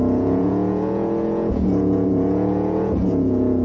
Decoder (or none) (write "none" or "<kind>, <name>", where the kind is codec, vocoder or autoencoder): vocoder, Vocos